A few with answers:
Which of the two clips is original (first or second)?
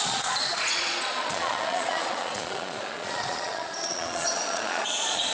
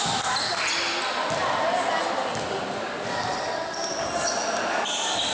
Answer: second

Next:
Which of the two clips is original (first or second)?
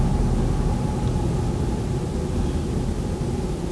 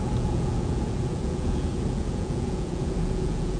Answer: first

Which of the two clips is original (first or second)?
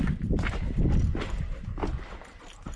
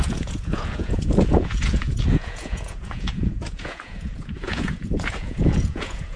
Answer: first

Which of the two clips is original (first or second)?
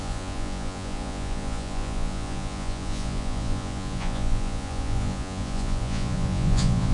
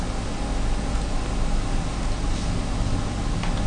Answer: second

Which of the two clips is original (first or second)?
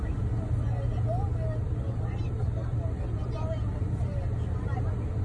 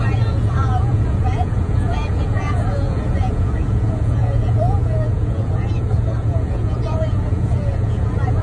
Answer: first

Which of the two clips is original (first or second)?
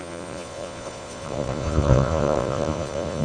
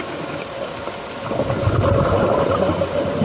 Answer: second